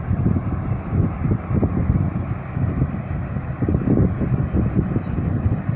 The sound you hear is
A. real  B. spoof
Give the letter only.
A